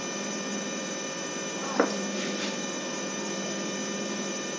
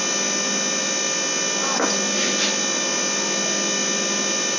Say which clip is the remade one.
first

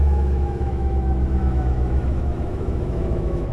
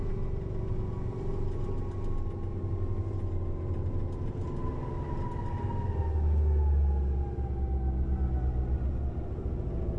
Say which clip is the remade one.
first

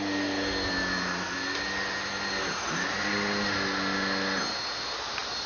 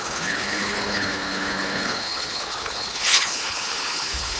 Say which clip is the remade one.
second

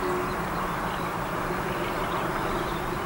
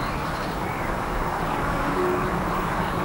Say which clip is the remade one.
second